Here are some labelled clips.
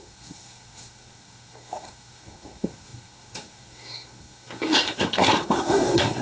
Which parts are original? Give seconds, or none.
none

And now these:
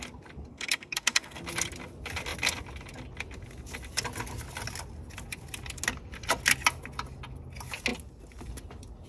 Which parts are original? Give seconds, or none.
0.0-0.5; 1.4-9.1

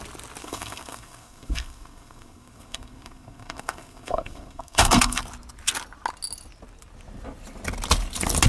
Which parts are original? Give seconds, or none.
0.0-0.4; 5.2-8.5

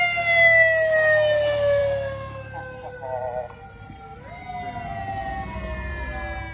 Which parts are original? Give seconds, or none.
0.0-6.5

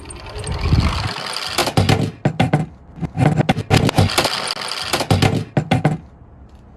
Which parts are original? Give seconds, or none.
0.0-6.8